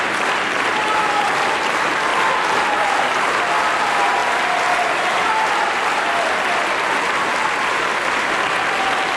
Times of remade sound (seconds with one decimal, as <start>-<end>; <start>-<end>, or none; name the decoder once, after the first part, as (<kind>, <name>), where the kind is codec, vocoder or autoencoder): none